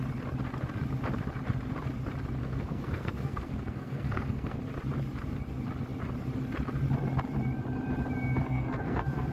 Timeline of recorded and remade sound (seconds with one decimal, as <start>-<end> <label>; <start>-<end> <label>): 0.0-2.4 recorded; 2.4-4.6 remade; 4.6-8.4 recorded; 8.4-9.3 remade